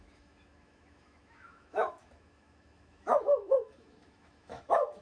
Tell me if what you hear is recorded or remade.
remade